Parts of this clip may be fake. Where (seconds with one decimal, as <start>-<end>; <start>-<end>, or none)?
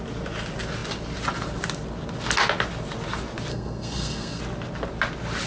3.5-4.4